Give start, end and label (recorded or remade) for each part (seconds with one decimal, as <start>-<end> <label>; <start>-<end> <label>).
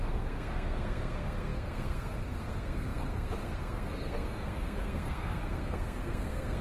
0.0-6.6 remade